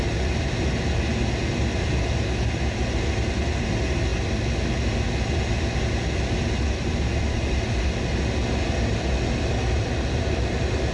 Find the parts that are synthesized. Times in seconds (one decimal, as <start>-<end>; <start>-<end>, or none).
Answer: none